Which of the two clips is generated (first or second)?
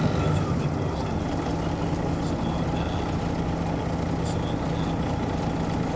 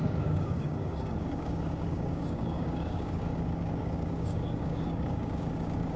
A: second